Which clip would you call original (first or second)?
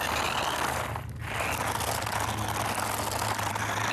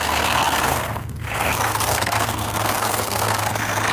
first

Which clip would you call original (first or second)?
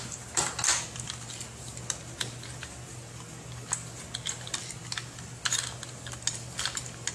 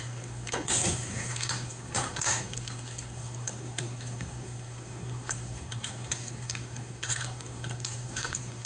first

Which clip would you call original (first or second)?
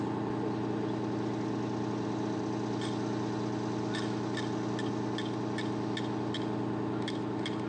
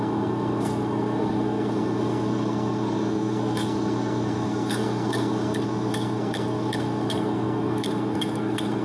first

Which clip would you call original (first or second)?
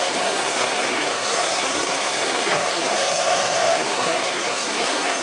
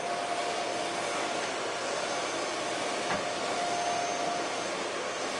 second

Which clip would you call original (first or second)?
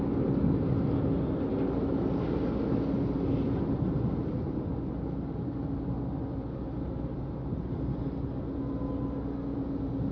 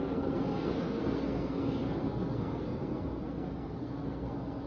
first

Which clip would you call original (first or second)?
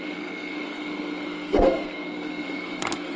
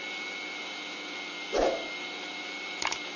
second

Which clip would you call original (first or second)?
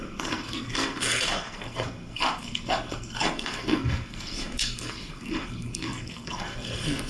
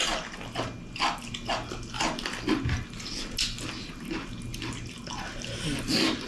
second